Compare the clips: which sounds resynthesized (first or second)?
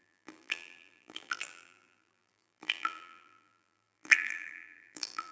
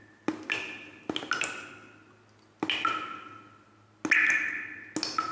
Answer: first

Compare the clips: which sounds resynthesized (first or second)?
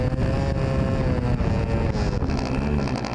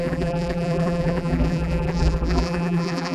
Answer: second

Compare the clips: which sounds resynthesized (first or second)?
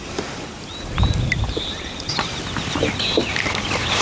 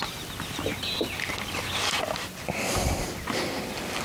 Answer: first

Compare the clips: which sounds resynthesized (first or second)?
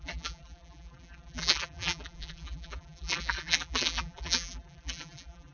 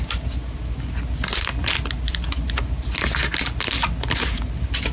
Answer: first